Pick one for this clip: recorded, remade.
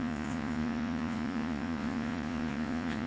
remade